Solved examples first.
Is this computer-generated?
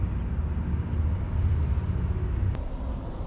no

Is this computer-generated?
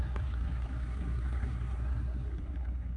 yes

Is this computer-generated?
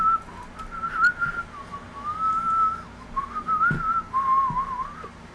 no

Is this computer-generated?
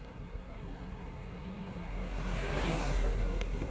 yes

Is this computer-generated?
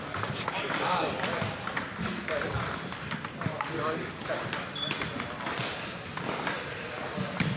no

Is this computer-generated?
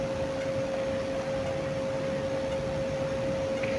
no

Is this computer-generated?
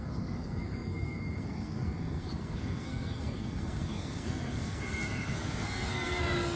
yes